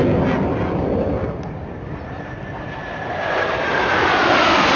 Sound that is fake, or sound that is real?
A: real